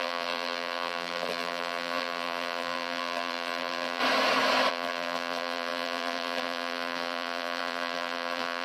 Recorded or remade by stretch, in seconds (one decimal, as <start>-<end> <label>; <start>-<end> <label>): 0.0-4.0 remade; 4.0-4.7 recorded; 4.7-8.6 remade